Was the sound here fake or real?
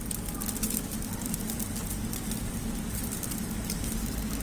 real